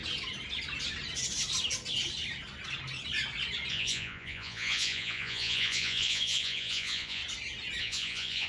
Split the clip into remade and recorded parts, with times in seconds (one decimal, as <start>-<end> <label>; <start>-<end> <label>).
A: 0.0-3.7 recorded; 3.7-7.2 remade; 7.2-7.8 recorded; 7.8-8.5 remade